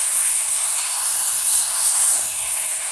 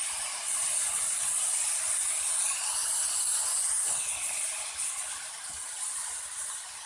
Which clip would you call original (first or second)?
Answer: second